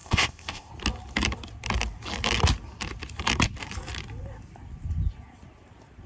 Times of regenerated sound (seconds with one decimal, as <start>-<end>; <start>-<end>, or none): 0.0-0.7